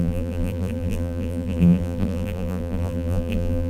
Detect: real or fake fake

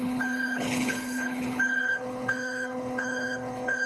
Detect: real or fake fake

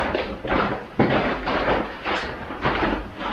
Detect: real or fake fake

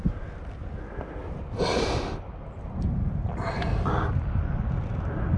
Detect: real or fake real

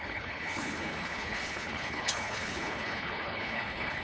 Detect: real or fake fake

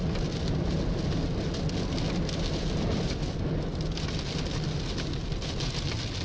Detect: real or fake real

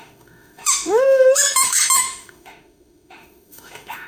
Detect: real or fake fake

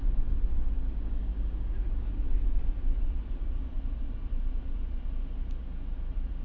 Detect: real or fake real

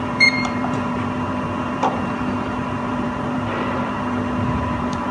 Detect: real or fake fake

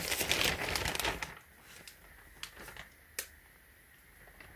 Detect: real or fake real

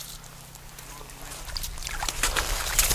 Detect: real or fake real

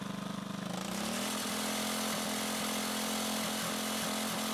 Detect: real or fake real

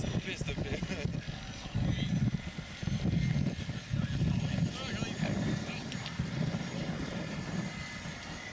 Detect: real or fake real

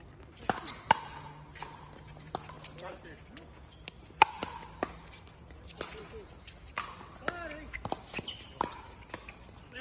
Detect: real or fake real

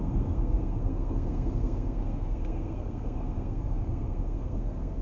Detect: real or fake fake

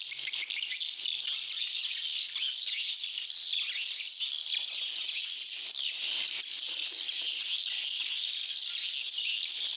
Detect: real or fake real